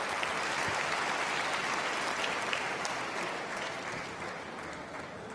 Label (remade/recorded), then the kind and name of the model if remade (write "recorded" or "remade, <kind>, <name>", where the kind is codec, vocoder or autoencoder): recorded